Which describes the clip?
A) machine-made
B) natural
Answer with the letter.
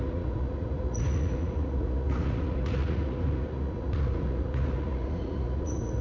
A